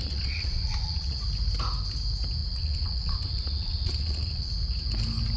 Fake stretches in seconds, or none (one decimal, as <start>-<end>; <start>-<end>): 0.0-1.2; 2.4-4.5